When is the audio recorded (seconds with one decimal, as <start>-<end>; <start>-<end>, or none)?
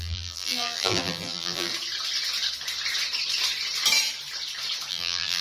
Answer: 1.7-4.9